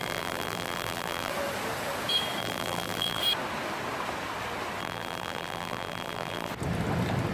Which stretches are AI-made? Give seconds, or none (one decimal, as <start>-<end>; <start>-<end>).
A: 0.0-1.3; 2.4-3.2; 4.8-6.5